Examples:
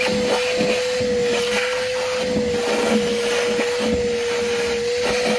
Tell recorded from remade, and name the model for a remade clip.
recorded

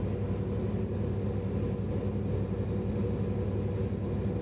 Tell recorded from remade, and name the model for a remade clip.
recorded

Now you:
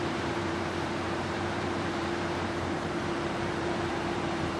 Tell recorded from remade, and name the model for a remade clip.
remade, vocoder, BigVGAN v2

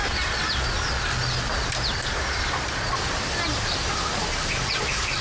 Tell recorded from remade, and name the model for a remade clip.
recorded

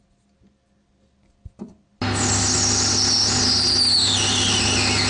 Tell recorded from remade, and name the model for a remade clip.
recorded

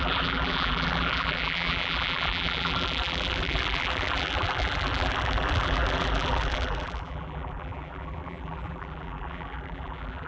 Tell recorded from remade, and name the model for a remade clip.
remade, vocoder, BigVGAN v2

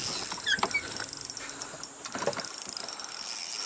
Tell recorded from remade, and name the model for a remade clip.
recorded